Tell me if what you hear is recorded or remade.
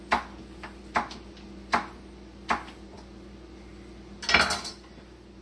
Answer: recorded